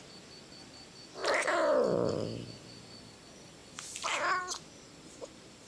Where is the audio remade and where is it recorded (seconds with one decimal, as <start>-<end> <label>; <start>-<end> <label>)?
0.0-5.7 recorded